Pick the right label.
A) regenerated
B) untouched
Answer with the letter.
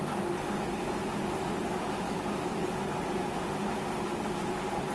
B